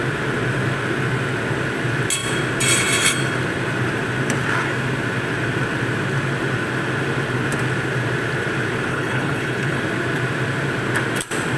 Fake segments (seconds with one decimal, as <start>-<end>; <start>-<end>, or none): 8.9-9.8